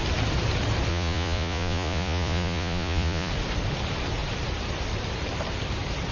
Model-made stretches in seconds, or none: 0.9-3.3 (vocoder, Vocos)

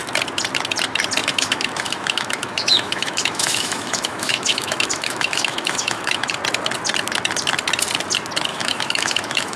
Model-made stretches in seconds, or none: 1.2-6.3 (autoencoder, DAC-VAE); 8.5-9.6

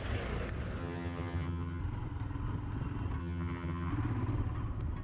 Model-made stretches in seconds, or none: 0.8-1.8 (vocoder, HiFi-GAN); 3.2-3.9